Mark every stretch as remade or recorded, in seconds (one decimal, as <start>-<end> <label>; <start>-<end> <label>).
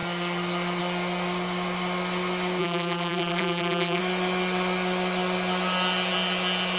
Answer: 0.0-2.6 recorded; 2.6-4.0 remade; 4.0-6.8 recorded